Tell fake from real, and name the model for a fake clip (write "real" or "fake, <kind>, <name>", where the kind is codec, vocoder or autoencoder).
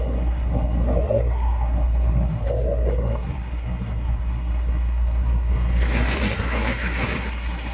fake, codec, SNAC